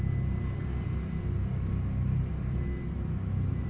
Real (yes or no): yes